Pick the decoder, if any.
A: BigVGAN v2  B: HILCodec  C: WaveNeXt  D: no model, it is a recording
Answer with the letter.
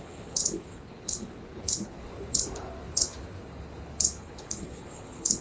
B